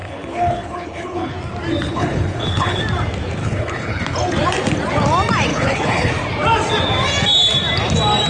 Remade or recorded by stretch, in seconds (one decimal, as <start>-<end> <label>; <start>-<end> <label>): 0.0-1.3 remade; 1.3-1.9 recorded; 1.9-2.8 remade; 2.8-3.4 recorded; 3.4-4.0 remade; 4.0-5.5 recorded; 5.5-6.1 remade; 6.1-8.3 recorded